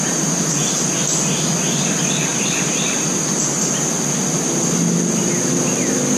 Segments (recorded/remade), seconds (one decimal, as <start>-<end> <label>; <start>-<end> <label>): 0.0-6.2 recorded